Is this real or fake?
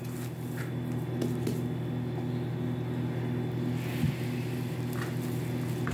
real